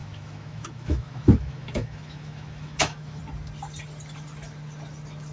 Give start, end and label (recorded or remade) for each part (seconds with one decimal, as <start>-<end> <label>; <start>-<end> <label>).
0.0-3.2 remade; 3.2-5.3 recorded